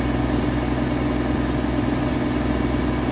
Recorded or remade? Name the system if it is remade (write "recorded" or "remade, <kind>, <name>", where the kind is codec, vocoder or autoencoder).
recorded